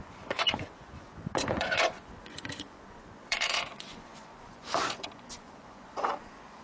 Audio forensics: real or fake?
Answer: fake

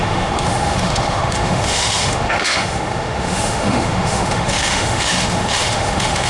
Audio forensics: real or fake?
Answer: fake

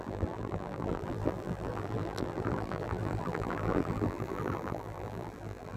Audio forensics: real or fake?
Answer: fake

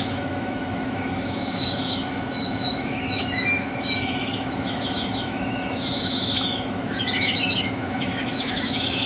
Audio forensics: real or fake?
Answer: fake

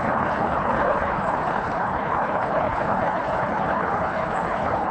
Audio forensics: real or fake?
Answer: fake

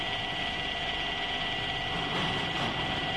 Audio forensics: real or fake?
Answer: real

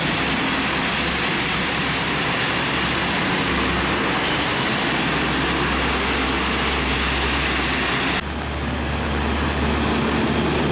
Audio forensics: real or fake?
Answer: real